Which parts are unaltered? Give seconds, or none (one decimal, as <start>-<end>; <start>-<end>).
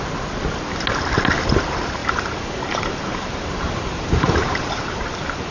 0.0-2.0